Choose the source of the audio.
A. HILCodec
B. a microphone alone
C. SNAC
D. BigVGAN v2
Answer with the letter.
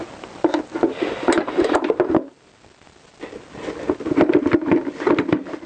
B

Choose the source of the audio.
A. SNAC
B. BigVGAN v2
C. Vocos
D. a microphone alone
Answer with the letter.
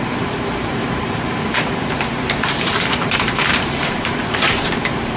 B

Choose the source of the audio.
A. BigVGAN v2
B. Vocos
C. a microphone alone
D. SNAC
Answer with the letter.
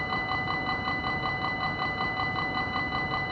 C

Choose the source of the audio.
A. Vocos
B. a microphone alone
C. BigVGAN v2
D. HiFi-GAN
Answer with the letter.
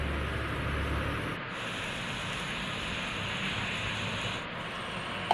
B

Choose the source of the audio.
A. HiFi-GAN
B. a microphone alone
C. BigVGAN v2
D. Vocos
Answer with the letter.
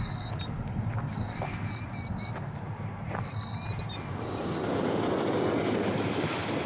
B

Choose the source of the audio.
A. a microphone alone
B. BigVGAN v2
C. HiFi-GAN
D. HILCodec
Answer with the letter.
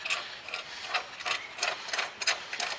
A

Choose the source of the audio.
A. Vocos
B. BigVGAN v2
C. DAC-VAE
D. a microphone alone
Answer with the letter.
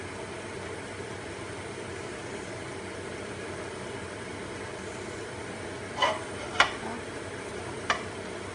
D